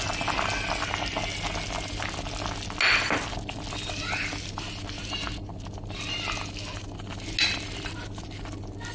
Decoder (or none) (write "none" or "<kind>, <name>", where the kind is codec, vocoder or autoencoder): none